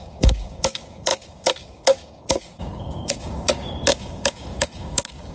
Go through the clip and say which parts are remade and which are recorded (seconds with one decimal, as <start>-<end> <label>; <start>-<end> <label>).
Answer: 0.0-5.3 remade